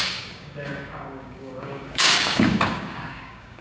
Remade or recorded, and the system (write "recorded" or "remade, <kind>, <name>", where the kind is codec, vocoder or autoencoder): remade, codec, DAC